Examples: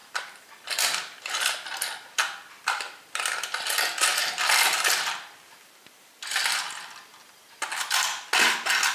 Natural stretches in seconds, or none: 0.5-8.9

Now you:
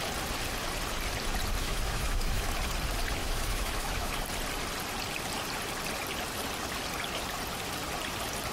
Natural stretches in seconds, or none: 0.0-1.6; 2.5-3.2; 4.1-8.5

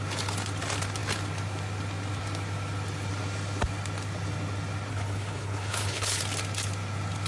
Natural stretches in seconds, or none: 0.0-4.9; 6.2-7.3

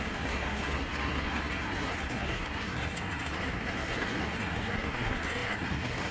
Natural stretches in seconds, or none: none